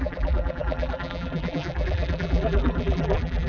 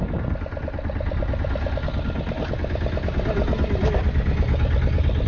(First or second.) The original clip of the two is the second